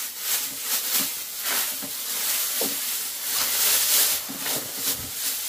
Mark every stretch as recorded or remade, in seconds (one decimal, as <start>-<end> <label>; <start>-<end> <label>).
0.0-5.5 recorded